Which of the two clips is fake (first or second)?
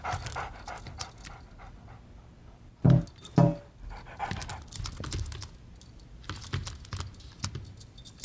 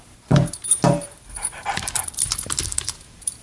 second